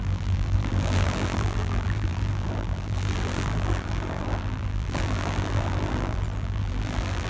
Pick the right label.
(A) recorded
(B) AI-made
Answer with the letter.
B